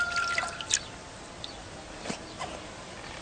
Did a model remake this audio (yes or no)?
no